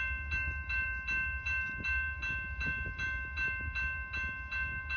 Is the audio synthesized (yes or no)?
no